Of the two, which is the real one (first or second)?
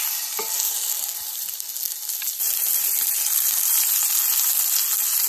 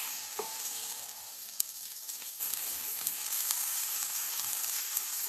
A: first